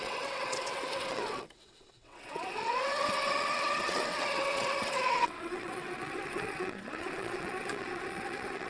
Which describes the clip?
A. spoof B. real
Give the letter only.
A